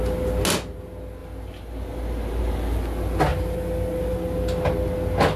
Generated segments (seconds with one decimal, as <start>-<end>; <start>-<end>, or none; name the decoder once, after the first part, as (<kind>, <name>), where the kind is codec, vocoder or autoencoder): none